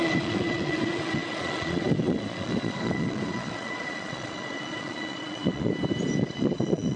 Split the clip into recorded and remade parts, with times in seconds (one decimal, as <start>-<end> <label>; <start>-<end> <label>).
0.0-5.7 remade; 5.7-6.2 recorded; 6.2-7.0 remade